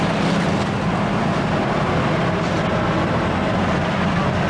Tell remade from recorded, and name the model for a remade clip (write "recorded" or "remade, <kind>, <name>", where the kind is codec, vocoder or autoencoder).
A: recorded